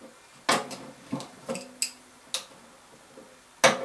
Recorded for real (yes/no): yes